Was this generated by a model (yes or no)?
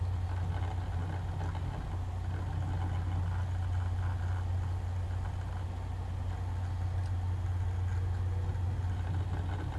no